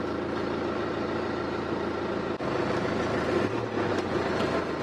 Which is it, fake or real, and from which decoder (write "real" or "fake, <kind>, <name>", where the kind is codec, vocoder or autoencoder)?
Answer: real